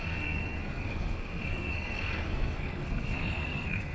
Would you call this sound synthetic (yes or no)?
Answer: yes